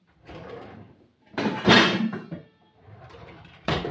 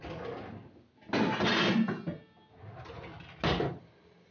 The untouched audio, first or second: second